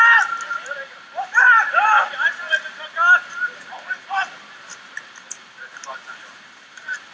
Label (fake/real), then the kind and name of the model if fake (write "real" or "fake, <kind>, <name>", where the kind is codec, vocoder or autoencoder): fake, vocoder, BigVGAN v2